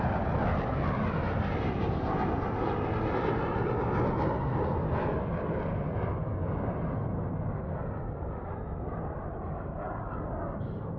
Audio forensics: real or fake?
real